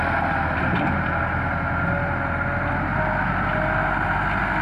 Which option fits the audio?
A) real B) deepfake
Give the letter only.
A